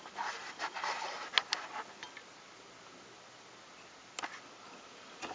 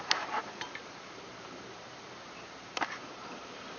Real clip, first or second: first